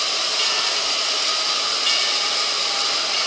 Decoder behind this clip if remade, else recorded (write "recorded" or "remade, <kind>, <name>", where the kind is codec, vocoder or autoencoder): recorded